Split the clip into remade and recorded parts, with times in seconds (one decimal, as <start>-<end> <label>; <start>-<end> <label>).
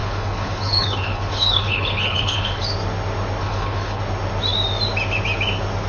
0.0-2.6 remade; 2.6-3.4 recorded; 3.4-4.0 remade; 4.0-5.9 recorded